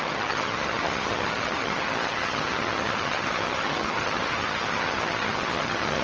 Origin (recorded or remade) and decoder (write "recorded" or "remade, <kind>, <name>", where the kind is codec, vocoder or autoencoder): remade, vocoder, HiFi-GAN